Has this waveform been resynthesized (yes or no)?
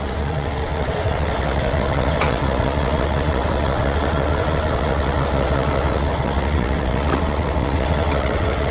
yes